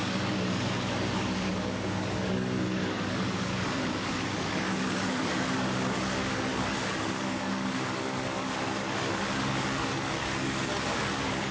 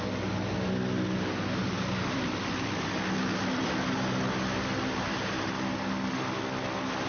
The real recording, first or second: second